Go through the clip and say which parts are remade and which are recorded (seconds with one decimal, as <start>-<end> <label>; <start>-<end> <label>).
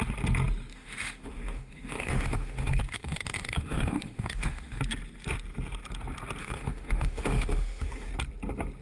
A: 0.0-0.7 recorded; 0.7-4.8 remade; 4.8-6.4 recorded; 6.4-8.1 remade; 8.1-8.8 recorded